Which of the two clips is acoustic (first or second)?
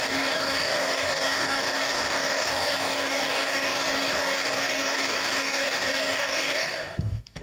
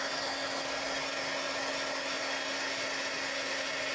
second